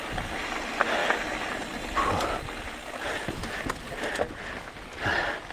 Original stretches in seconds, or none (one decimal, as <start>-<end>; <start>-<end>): 0.0-5.5